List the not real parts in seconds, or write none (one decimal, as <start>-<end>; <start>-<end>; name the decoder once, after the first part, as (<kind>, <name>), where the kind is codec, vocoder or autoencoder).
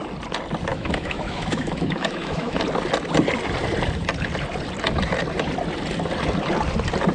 0.7-2.6 (autoencoder, DAC-VAE)